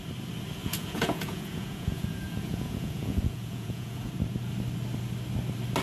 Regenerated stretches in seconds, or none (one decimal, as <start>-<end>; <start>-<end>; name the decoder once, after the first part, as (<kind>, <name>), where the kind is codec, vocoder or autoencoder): 0.6-4.1 (vocoder, Vocos)